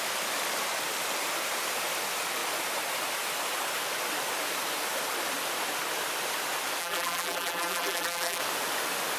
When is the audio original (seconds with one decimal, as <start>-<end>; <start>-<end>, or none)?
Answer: 0.0-6.8; 8.4-9.2